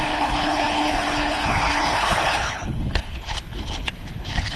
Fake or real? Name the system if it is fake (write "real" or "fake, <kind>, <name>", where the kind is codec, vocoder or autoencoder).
fake, codec, HILCodec